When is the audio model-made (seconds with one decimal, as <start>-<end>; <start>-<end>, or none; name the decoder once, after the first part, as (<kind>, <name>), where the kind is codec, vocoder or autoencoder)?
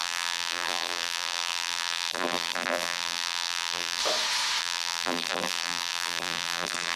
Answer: 0.0-4.0 (vocoder, BigVGAN v2); 4.6-7.0